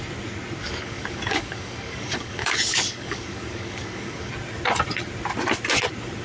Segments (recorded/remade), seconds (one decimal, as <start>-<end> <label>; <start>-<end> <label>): 0.0-0.6 recorded; 0.6-4.3 remade; 4.3-6.2 recorded